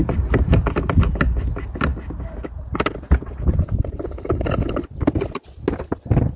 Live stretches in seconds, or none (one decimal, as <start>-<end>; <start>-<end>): 0.0-6.4